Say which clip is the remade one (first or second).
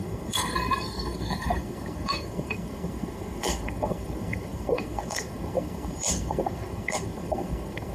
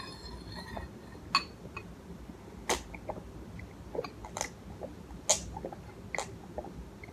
first